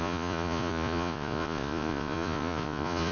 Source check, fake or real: fake